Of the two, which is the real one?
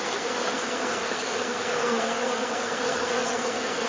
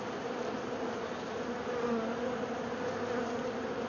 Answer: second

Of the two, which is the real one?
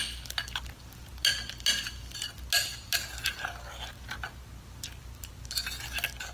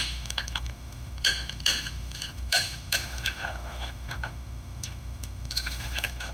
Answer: first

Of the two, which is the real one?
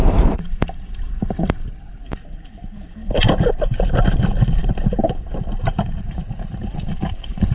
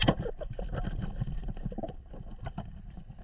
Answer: second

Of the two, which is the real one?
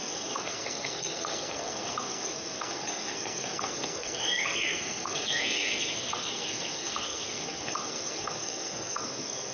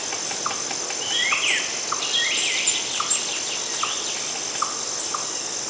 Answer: second